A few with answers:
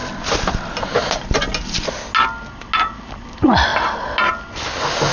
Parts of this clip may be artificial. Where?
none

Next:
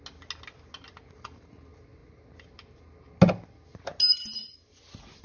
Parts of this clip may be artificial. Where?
none

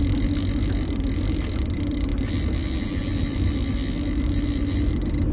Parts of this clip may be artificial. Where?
none

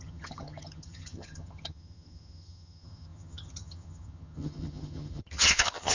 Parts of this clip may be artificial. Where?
0.0-5.9 (vocoder, HiFi-GAN)

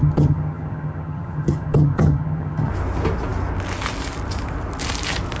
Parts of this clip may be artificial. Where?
0.0-2.7 (vocoder, HiFi-GAN)

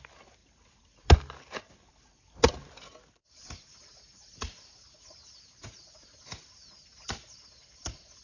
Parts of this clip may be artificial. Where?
none